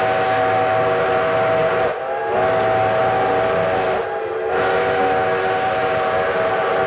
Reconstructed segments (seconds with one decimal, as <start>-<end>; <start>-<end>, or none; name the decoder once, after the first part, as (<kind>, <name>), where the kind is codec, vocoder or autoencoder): none

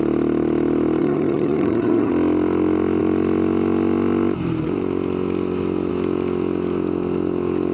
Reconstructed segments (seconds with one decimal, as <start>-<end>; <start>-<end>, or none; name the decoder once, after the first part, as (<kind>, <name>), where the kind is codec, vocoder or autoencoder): 1.0-2.1 (vocoder, HiFi-GAN)

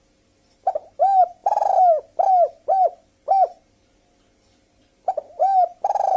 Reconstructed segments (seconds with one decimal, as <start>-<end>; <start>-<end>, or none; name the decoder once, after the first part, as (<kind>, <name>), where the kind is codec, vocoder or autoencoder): none

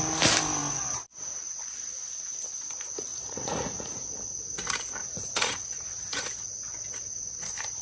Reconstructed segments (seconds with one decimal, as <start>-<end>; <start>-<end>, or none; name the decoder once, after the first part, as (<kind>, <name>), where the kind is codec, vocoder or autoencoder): 3.1-4.1 (vocoder, Vocos); 5.0-6.2

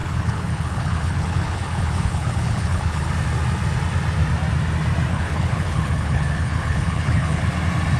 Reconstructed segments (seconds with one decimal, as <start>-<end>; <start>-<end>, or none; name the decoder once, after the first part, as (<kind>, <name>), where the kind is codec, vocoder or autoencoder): 0.0-3.1 (codec, HILCodec); 5.1-7.4

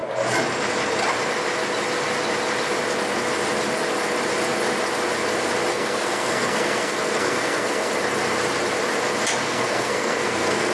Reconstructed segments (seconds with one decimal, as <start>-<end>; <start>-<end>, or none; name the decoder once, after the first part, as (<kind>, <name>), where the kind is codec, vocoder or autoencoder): 5.7-7.9 (codec, SNAC); 9.4-10.7

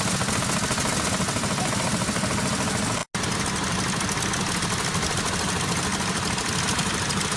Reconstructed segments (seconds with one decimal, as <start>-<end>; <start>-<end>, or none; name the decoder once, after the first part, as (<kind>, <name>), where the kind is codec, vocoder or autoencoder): none